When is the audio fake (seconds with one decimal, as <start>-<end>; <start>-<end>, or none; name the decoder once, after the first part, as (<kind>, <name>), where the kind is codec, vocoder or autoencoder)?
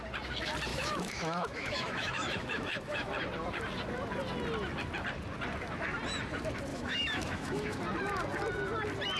0.7-3.1 (autoencoder, DAC-VAE); 6.7-7.8